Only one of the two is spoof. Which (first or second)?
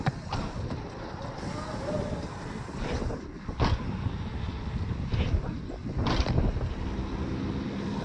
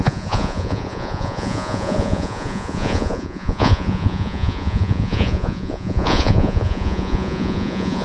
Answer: second